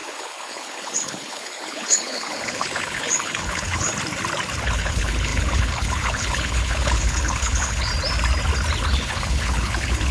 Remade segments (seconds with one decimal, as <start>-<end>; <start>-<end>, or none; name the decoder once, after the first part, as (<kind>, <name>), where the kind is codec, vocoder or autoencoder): 0.0-3.9 (codec, HILCodec); 4.6-7.9; 8.8-10.1